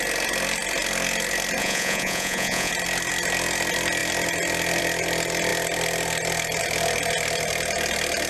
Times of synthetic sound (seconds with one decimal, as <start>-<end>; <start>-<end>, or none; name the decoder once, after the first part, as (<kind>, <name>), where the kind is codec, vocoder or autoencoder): 1.6-2.7 (vocoder, Vocos)